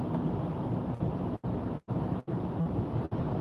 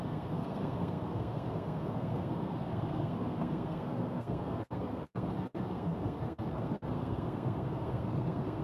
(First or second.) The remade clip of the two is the second